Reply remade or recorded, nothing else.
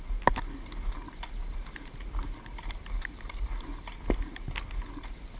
recorded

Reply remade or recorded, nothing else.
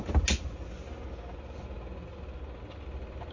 recorded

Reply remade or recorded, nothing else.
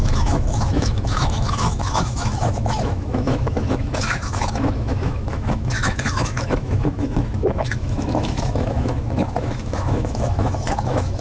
remade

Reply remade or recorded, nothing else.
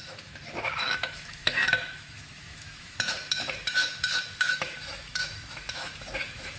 remade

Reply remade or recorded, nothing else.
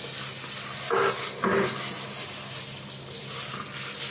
recorded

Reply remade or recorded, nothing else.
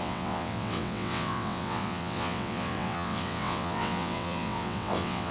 remade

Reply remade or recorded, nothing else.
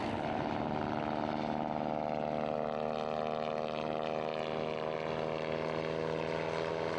recorded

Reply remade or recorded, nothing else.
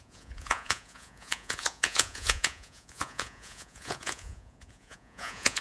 remade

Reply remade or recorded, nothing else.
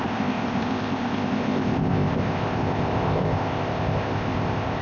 remade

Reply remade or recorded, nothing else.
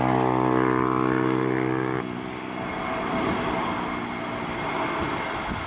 recorded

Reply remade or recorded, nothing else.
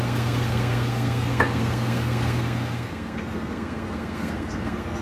remade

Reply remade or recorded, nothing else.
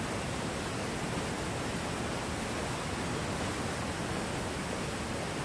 recorded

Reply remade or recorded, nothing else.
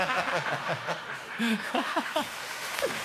remade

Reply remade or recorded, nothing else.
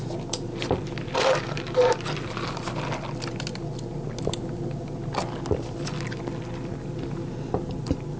recorded